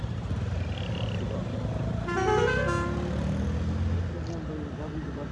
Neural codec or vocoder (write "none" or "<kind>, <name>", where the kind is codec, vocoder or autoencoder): none